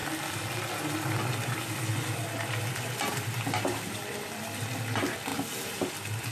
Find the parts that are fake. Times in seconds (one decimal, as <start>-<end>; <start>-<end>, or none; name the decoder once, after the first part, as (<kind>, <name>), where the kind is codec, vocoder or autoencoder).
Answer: none